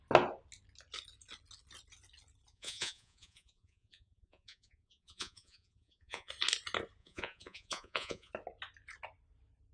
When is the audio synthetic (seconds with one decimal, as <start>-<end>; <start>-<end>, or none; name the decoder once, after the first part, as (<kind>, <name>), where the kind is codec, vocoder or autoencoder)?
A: 2.5-6.3 (vocoder, Vocos); 7.0-8.3